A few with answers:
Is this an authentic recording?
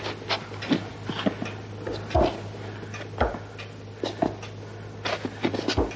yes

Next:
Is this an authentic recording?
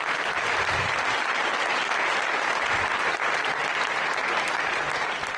yes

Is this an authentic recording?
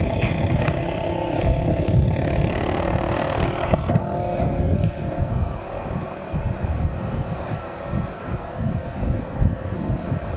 no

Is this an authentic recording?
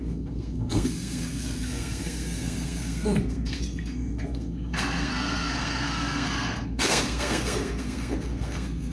no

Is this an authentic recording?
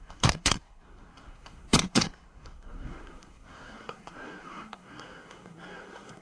no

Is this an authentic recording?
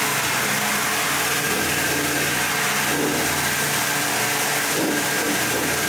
yes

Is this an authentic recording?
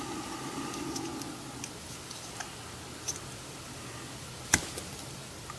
yes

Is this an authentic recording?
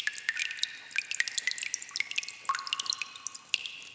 yes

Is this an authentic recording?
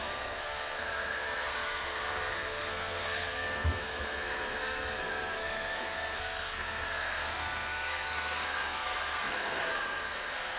no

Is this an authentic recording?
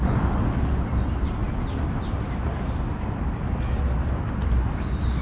yes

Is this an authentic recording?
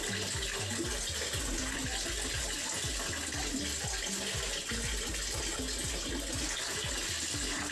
yes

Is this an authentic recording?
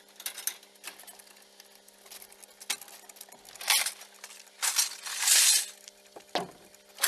yes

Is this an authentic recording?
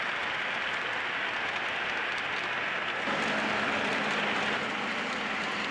yes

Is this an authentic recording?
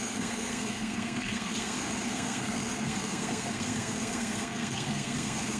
no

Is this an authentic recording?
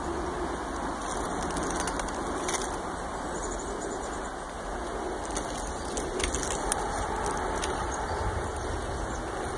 yes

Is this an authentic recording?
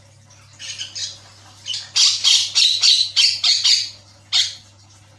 yes